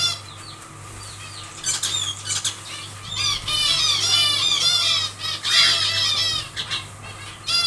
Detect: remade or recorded recorded